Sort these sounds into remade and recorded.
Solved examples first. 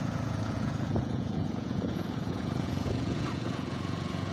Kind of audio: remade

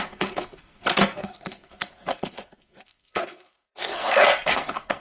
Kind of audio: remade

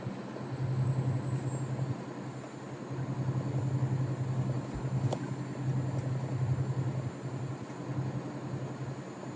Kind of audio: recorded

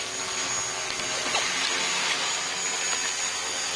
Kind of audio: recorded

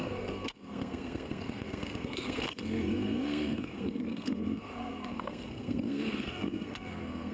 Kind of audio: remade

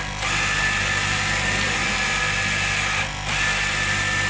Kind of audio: recorded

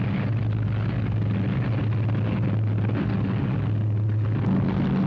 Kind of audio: recorded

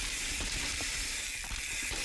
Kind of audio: recorded